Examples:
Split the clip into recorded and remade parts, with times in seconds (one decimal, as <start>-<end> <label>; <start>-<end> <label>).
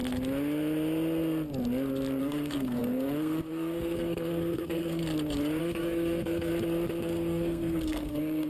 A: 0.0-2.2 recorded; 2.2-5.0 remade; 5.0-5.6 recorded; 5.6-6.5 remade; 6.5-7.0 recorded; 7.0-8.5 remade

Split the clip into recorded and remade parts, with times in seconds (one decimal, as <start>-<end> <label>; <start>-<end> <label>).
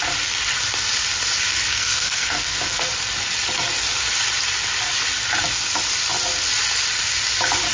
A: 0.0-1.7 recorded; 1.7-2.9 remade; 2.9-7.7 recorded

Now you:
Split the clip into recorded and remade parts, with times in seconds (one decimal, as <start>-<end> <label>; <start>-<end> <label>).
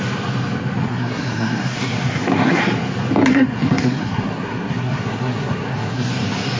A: 0.0-0.8 recorded; 0.8-2.6 remade; 2.6-3.3 recorded; 3.3-6.1 remade; 6.1-6.6 recorded